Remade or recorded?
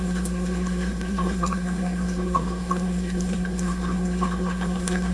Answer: remade